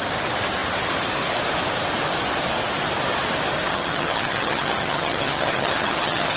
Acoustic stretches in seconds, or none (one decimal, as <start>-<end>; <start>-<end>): 0.0-3.7

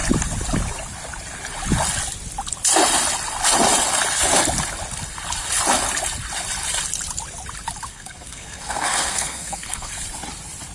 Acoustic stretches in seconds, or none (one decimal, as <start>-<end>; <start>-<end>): 0.0-7.9; 9.9-10.7